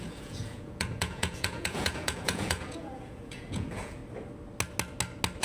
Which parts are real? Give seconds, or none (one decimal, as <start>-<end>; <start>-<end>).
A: 4.0-5.4

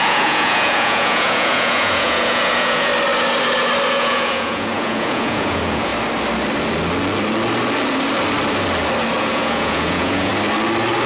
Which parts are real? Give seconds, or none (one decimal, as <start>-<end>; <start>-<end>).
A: 2.9-3.9; 5.9-9.2; 10.3-11.1

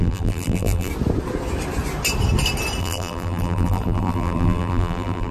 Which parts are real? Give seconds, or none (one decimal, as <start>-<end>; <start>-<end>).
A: 0.9-2.8

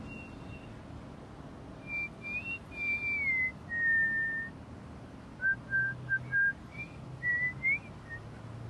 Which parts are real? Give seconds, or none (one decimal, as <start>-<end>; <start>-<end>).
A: 0.0-6.8; 7.3-8.7

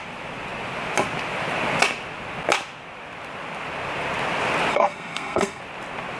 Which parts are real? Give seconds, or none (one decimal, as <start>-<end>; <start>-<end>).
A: 0.0-4.7; 5.6-6.2

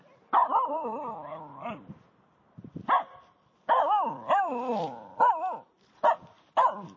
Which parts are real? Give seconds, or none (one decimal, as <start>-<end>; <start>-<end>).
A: none

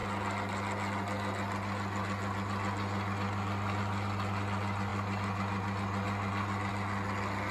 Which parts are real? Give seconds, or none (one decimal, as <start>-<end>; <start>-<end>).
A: 0.0-7.5